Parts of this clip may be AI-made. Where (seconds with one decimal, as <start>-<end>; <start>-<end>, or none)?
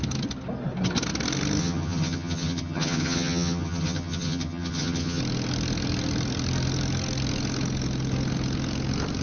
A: 1.6-5.2